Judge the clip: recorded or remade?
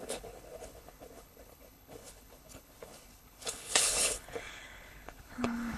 remade